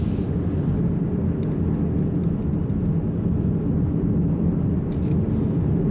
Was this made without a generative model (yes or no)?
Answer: yes